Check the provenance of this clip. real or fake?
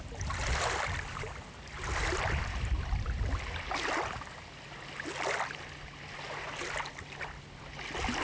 real